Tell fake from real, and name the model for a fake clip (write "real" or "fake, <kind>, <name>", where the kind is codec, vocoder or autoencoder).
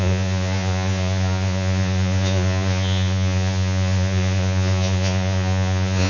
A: fake, vocoder, Vocos